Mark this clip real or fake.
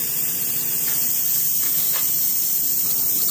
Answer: fake